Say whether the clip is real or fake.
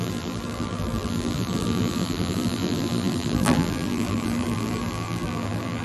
fake